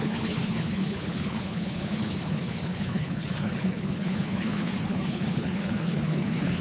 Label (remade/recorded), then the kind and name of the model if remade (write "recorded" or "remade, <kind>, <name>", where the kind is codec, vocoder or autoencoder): remade, codec, HILCodec